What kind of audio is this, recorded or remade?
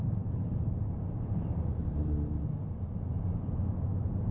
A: remade